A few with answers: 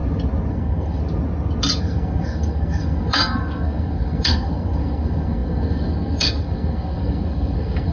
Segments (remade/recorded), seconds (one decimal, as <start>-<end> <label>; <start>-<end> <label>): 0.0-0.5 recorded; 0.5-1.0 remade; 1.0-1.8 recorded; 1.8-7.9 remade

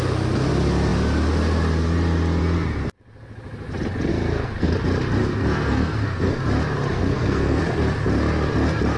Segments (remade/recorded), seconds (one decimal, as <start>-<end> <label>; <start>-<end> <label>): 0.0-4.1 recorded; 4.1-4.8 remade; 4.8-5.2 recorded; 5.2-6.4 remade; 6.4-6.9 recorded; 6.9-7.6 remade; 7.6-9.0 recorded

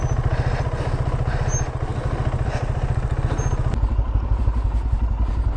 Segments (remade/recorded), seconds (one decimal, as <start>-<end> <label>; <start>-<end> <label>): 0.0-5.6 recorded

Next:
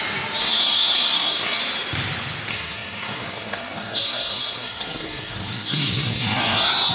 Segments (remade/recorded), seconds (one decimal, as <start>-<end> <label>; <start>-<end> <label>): 0.0-0.4 recorded; 0.4-1.6 remade; 1.6-2.5 recorded; 2.5-6.9 remade